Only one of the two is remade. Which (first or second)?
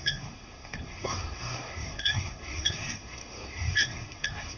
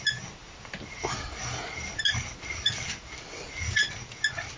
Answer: first